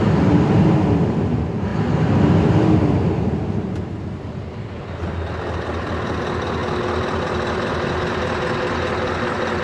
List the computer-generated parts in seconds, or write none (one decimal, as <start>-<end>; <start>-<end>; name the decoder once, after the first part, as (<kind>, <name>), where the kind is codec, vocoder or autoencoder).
none